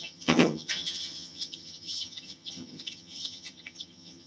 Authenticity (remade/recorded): remade